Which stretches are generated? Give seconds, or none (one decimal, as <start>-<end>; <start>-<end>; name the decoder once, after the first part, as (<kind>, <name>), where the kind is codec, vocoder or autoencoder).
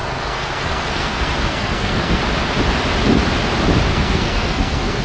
0.0-2.2 (codec, SNAC); 3.9-5.0